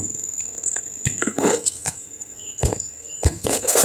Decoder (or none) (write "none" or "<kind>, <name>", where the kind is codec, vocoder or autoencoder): codec, SNAC